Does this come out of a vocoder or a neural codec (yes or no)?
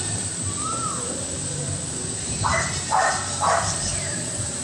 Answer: yes